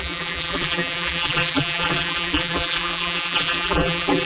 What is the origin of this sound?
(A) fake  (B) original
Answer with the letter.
A